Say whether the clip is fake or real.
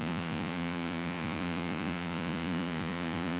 fake